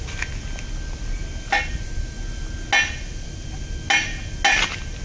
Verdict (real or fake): real